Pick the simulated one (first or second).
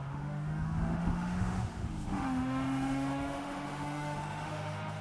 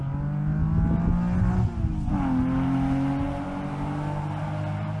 first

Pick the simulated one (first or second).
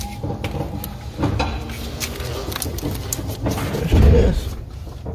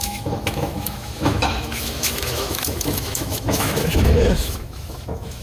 second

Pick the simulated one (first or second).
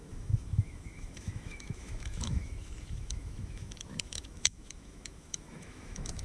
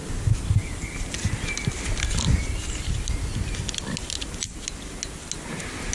first